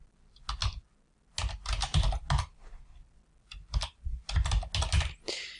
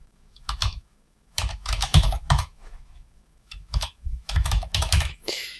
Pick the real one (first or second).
first